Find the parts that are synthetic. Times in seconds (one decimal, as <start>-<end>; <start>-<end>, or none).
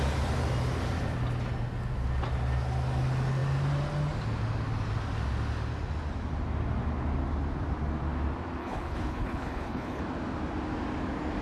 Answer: 8.6-10.0